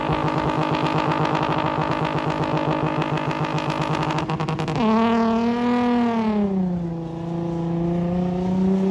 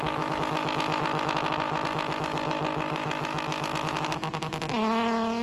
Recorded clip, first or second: first